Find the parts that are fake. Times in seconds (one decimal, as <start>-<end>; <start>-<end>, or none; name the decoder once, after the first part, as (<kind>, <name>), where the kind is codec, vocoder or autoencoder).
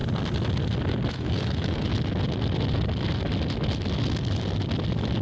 1.1-1.9 (autoencoder, DAC-VAE)